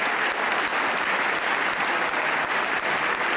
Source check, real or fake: real